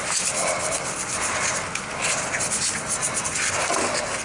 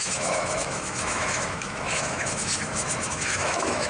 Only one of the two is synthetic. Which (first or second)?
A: second